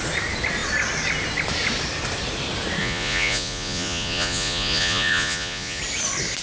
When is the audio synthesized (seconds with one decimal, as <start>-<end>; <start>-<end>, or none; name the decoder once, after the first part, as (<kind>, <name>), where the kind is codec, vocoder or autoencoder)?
2.8-5.8 (vocoder, Vocos)